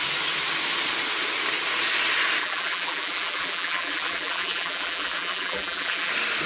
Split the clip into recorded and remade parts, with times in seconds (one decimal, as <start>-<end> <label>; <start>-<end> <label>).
0.0-2.4 recorded; 2.4-6.1 remade; 6.1-6.5 recorded

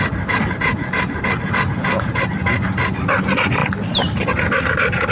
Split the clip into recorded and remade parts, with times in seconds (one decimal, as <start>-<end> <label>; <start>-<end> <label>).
0.0-5.1 recorded

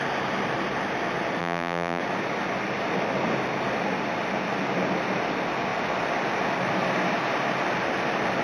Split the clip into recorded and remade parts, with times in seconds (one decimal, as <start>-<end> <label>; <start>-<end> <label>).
0.0-1.4 recorded; 1.4-2.0 remade; 2.0-8.4 recorded

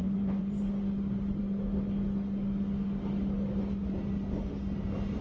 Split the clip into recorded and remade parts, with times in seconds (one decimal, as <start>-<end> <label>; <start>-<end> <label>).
0.0-0.6 remade; 0.6-5.2 recorded

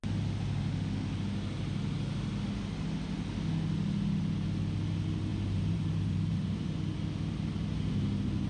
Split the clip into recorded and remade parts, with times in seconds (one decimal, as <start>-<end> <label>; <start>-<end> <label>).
0.0-5.3 recorded; 5.3-6.7 remade; 6.7-8.5 recorded